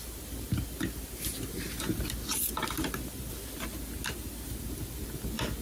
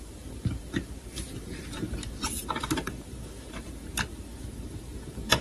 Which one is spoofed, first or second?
second